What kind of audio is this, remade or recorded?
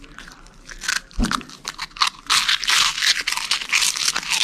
recorded